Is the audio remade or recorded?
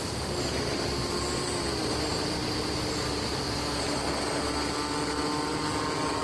recorded